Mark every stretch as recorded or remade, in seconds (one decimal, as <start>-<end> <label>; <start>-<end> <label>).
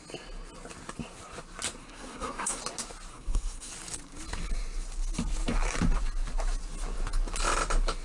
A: 0.0-1.8 recorded; 1.8-2.6 remade; 2.6-3.1 recorded; 3.1-3.7 remade; 3.7-8.0 recorded